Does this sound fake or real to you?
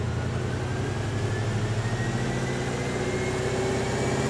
real